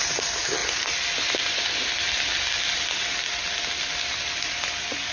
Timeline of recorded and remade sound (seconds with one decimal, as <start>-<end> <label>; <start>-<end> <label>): 0.0-5.1 recorded